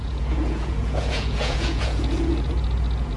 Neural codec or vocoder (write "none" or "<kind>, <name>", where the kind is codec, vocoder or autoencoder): vocoder, Vocos